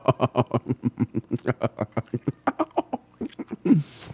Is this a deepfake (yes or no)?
no